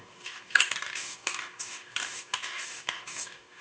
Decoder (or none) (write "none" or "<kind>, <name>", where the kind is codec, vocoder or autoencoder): codec, DAC